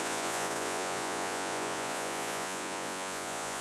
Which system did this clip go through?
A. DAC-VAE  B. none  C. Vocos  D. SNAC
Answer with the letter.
C